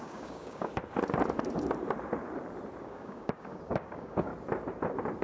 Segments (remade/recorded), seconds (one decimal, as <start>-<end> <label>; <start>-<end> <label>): 0.0-0.7 remade; 0.7-2.8 recorded; 2.8-4.3 remade; 4.3-5.2 recorded